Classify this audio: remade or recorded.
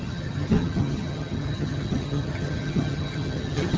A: remade